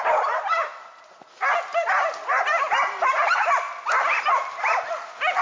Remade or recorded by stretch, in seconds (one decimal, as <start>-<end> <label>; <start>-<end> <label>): 0.0-5.4 recorded